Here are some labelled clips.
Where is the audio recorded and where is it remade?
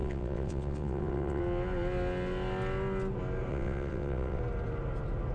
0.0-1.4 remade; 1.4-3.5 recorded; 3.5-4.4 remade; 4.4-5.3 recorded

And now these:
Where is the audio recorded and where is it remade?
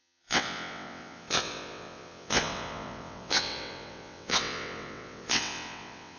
0.0-6.2 remade